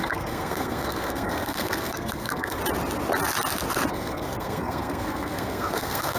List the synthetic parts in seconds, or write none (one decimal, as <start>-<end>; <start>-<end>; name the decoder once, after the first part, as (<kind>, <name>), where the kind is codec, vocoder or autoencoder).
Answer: 0.0-2.6 (codec, SNAC); 3.9-6.2